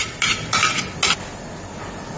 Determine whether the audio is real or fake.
real